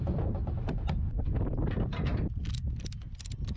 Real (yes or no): yes